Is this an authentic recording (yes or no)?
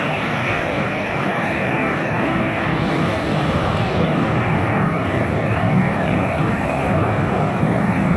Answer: no